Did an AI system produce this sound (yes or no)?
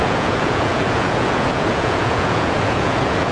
yes